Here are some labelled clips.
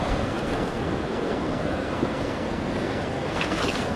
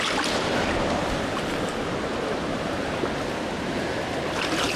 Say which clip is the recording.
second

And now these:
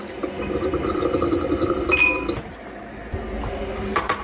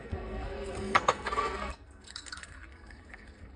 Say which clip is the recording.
first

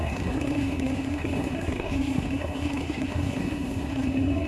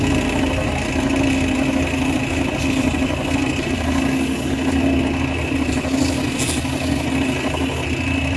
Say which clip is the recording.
second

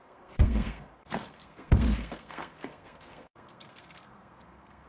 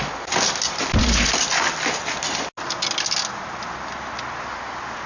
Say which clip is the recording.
second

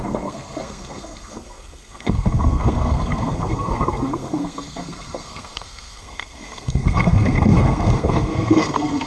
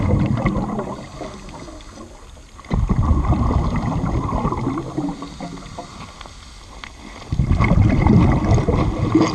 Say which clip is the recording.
second